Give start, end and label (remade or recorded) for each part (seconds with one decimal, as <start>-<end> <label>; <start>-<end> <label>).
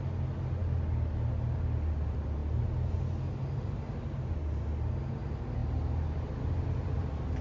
0.0-7.4 recorded